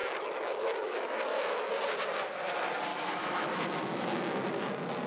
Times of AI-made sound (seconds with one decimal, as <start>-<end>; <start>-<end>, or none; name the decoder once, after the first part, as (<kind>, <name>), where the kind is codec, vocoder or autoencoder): 0.0-1.7 (autoencoder, DAC-VAE); 2.9-4.5